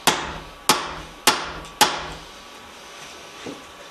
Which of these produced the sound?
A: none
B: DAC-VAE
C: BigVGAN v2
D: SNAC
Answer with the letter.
A